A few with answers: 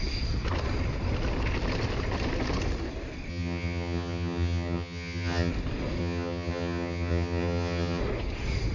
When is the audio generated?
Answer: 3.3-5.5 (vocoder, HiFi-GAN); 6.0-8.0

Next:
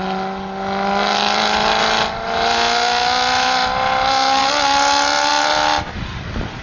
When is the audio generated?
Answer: none

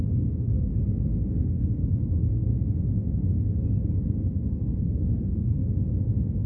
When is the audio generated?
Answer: 0.0-0.7 (codec, SNAC); 1.3-2.5; 4.5-5.6